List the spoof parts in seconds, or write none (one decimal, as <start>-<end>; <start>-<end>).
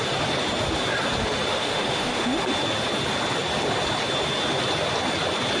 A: 1.5-2.4